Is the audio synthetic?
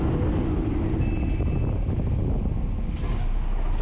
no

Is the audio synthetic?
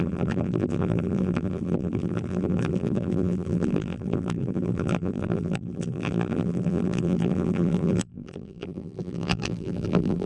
yes